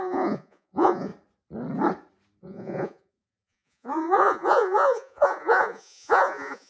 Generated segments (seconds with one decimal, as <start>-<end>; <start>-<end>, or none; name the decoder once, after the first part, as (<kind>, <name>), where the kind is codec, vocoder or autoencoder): 0.0-1.1 (vocoder, Vocos); 2.4-6.7